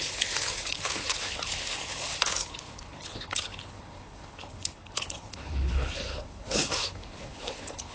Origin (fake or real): fake